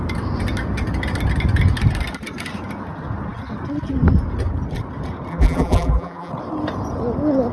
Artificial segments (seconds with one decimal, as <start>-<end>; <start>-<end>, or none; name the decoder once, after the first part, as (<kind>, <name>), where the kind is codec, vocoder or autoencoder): 5.3-6.3 (vocoder, BigVGAN v2)